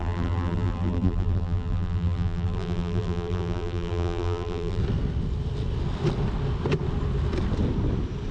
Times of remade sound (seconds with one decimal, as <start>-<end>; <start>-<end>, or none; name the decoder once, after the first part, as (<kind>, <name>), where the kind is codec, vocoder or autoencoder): 0.0-4.8 (vocoder, BigVGAN v2)